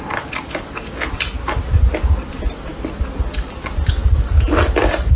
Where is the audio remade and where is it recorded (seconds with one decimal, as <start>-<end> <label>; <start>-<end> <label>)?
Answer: 0.0-5.2 recorded